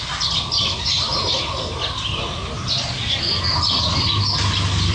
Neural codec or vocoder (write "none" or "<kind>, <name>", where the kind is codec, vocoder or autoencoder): none